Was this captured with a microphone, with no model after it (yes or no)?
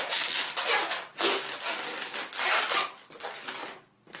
yes